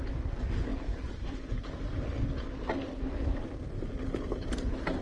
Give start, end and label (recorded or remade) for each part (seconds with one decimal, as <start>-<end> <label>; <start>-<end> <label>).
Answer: 0.0-5.0 recorded